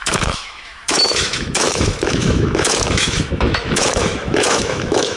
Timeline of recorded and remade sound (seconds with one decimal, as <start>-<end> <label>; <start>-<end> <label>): 0.0-5.2 remade